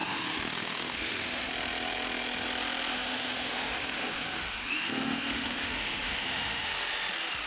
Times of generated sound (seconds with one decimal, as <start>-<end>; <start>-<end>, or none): 0.0-1.5; 2.9-6.6